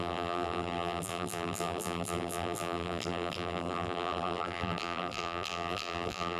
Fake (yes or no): yes